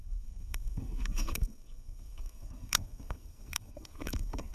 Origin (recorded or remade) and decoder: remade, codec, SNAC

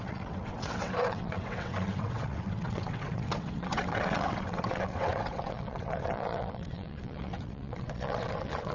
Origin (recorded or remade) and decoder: remade, vocoder, WaveNeXt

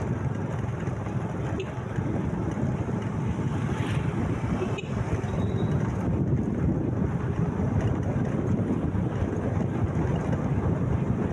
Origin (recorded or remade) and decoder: recorded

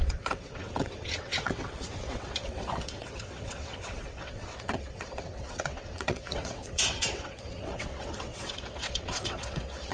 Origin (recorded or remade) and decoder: remade, vocoder, WaveNeXt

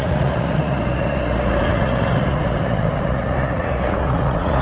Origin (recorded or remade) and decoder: remade, vocoder, Vocos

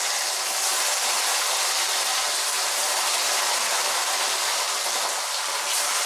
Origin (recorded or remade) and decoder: recorded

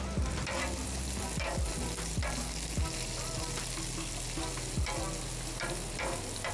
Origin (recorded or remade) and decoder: recorded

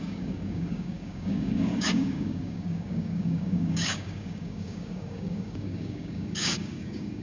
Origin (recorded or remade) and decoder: remade, codec, DAC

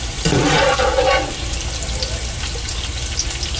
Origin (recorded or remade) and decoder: recorded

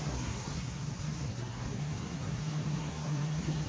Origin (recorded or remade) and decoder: remade, codec, SNAC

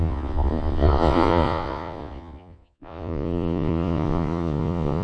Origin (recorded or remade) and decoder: remade, vocoder, Vocos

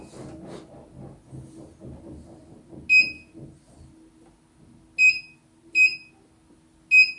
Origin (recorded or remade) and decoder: recorded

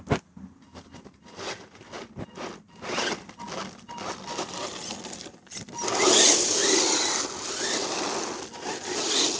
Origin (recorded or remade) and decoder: recorded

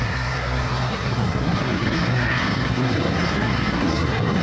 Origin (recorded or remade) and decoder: remade, codec, SNAC